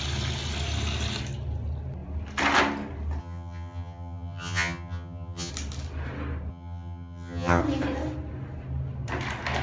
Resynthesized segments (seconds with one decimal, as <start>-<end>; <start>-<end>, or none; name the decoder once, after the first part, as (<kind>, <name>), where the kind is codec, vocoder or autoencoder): 3.2-5.5 (vocoder, HiFi-GAN); 6.5-7.6